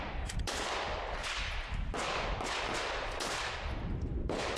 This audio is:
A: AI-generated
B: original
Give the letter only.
B